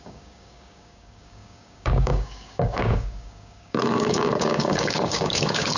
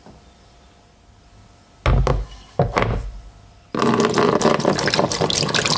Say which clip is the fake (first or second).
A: first